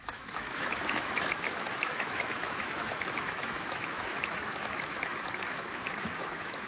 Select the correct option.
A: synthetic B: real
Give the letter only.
A